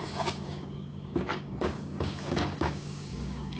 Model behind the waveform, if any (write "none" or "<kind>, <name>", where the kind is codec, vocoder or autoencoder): codec, DAC